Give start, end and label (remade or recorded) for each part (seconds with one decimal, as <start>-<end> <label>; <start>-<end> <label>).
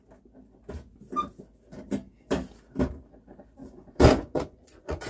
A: 0.0-3.6 recorded; 3.6-5.1 remade